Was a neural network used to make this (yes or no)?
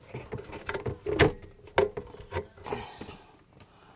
no